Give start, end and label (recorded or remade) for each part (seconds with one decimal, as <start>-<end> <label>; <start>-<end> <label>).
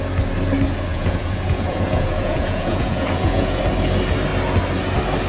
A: 0.0-0.9 recorded; 0.9-3.6 remade; 3.6-5.3 recorded